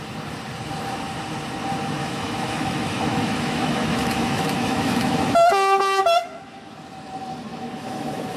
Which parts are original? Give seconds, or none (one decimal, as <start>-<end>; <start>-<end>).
0.0-2.0; 6.0-7.5